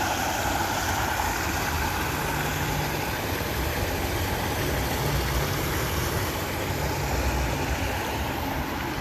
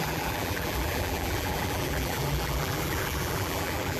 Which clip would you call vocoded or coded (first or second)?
second